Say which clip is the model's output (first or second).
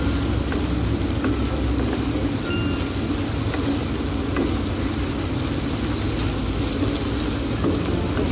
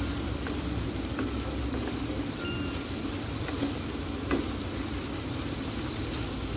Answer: second